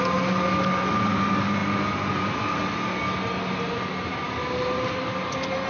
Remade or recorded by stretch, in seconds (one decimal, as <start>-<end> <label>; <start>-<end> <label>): 0.0-5.7 recorded